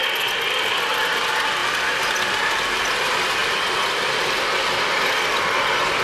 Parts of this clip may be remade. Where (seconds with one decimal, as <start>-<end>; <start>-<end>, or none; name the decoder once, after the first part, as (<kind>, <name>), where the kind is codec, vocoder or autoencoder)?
1.6-2.8 (vocoder, BigVGAN v2); 3.4-4.4